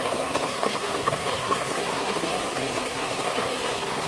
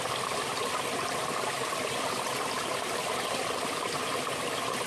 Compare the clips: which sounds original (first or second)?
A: second